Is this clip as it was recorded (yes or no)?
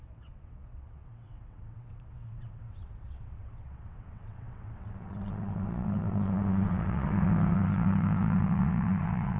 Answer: no